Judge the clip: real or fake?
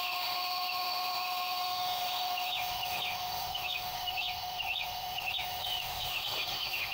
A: fake